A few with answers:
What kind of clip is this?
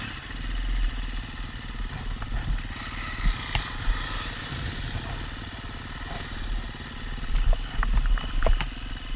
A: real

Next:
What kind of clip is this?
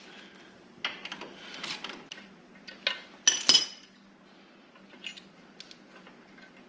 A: real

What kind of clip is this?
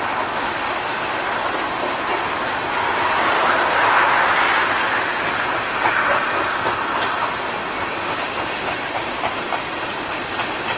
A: real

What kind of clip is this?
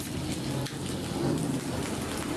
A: real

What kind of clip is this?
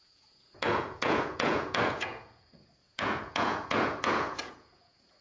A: fake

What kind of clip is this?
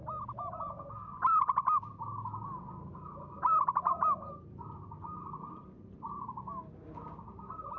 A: real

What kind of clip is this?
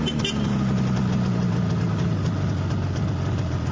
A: real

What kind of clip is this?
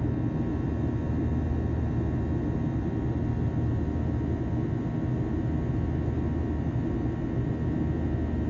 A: real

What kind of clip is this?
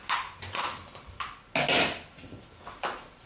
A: real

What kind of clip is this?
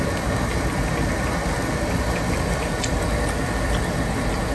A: real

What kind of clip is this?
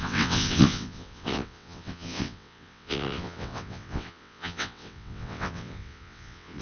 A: fake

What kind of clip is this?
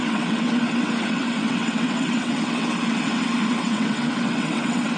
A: fake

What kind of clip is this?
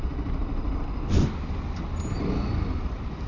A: real